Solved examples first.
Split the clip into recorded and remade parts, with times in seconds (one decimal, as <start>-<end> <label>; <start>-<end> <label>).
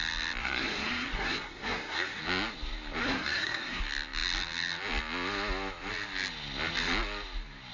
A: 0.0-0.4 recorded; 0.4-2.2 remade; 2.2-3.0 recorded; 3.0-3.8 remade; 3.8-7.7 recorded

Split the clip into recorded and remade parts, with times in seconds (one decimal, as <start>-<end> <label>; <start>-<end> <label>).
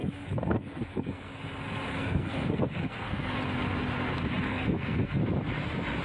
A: 0.0-1.4 remade; 1.4-1.9 recorded; 1.9-3.4 remade; 3.4-4.5 recorded; 4.5-5.2 remade; 5.2-6.0 recorded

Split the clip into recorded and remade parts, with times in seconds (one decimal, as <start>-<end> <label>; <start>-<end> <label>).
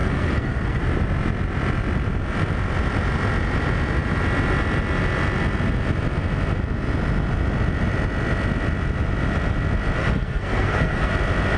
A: 0.0-0.8 remade; 0.8-10.0 recorded; 10.0-11.1 remade; 11.1-11.6 recorded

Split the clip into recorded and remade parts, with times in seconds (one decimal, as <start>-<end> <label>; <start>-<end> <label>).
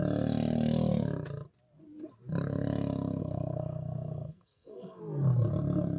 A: 0.0-3.2 recorded; 3.2-5.0 remade; 5.0-6.0 recorded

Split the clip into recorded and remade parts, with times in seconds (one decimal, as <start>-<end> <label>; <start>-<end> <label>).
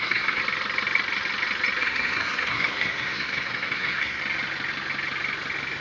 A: 0.0-0.4 remade; 0.4-1.8 recorded; 1.8-4.2 remade; 4.2-5.8 recorded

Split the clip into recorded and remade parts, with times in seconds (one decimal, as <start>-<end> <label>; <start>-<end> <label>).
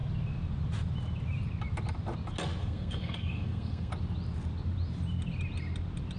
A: 0.0-2.6 recorded; 2.6-3.9 remade; 3.9-6.2 recorded